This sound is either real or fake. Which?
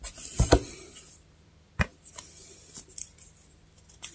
real